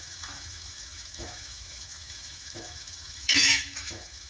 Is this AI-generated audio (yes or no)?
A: yes